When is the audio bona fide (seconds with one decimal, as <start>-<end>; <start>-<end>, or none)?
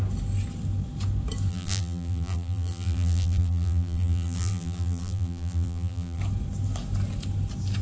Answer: 0.0-1.5; 6.2-7.8